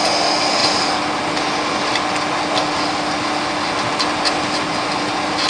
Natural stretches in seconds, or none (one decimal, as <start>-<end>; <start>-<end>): 0.0-5.5